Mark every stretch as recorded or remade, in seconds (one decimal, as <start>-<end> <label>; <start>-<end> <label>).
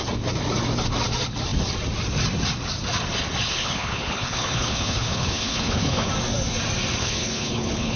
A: 0.0-3.5 recorded; 3.5-6.1 remade; 6.1-7.0 recorded; 7.0-8.0 remade